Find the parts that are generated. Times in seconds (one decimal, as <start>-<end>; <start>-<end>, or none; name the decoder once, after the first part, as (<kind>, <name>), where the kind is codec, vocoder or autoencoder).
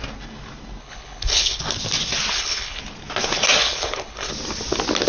0.8-1.6 (codec, HILCodec); 2.3-2.8; 3.6-4.3